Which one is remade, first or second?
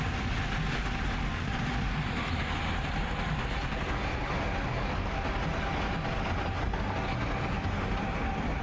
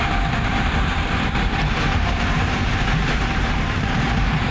second